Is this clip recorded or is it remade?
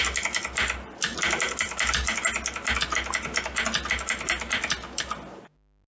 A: recorded